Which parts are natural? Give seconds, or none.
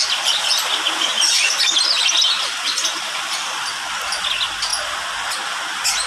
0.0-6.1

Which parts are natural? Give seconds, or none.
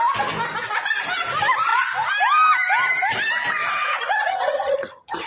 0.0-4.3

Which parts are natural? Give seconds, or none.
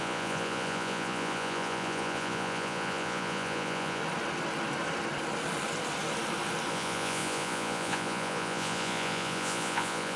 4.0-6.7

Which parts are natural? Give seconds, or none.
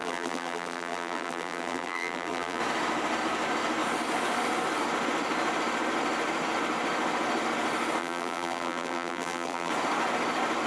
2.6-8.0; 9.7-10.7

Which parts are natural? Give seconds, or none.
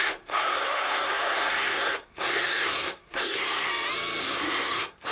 3.7-4.2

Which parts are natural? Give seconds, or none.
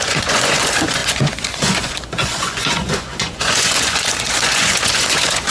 none